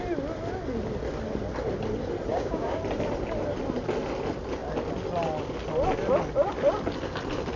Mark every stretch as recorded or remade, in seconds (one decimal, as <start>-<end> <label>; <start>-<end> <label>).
0.0-2.3 recorded; 2.3-2.8 remade; 2.8-7.6 recorded